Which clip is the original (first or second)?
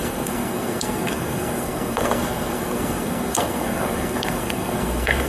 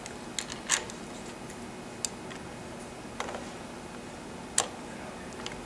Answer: second